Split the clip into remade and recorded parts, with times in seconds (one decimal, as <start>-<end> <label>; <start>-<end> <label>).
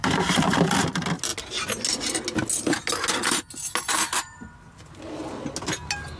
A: 0.0-0.5 remade; 0.5-6.2 recorded